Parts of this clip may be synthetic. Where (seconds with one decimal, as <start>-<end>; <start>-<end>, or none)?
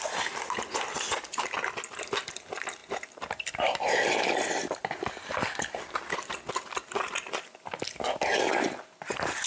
none